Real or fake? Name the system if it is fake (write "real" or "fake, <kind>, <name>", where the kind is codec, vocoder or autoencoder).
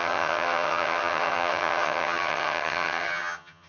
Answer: fake, vocoder, HiFi-GAN